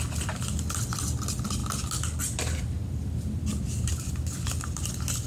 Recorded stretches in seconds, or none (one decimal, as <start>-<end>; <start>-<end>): 0.0-5.3